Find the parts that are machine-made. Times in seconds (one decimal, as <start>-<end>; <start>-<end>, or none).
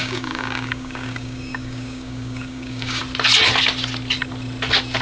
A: 0.0-3.0